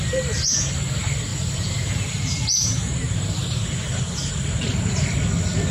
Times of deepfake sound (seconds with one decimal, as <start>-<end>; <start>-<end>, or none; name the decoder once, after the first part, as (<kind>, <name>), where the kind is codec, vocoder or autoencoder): 1.3-4.3 (vocoder, BigVGAN v2)